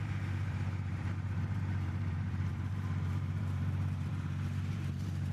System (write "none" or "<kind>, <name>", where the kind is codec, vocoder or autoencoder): vocoder, BigVGAN v2